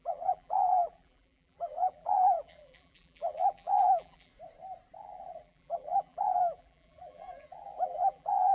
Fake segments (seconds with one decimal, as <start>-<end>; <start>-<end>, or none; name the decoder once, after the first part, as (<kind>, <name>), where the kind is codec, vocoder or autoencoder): 0.0-4.3 (vocoder, BigVGAN v2); 5.0-8.5